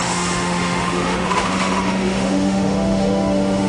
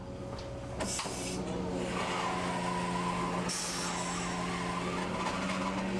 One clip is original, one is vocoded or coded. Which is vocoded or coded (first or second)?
first